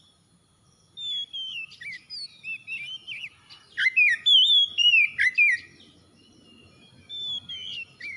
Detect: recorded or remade recorded